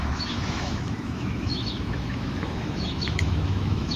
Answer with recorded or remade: remade